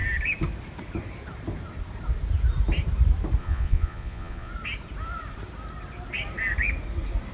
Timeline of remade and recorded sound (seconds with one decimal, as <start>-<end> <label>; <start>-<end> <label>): 0.0-3.4 recorded; 3.4-4.5 remade; 4.5-7.3 recorded